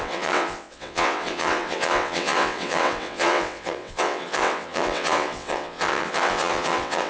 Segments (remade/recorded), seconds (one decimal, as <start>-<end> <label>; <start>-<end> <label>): 0.0-7.1 remade